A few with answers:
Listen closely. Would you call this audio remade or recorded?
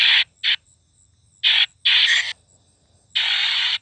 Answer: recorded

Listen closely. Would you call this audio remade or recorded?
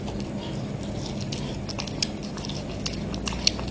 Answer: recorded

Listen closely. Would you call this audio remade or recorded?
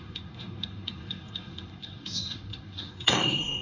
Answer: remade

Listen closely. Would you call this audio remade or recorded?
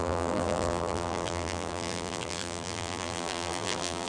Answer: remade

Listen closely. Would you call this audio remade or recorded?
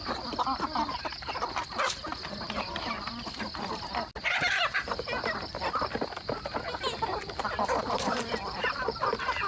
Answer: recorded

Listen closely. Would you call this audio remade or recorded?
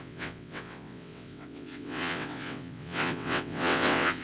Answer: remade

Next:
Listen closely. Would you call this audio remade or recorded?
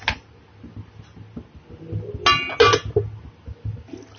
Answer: recorded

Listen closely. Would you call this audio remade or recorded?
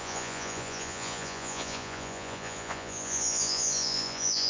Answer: remade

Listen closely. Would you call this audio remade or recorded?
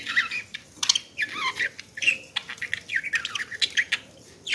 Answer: recorded